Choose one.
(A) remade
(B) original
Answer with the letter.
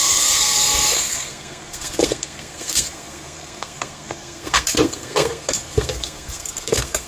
A